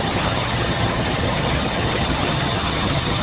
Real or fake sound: fake